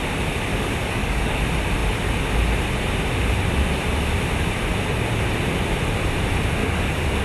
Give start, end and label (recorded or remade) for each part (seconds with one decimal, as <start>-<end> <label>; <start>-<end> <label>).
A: 0.0-0.5 recorded; 0.5-1.4 remade; 1.4-6.6 recorded; 6.6-7.2 remade